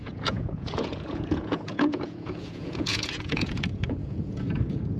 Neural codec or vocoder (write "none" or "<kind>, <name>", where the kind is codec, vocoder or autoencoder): vocoder, Vocos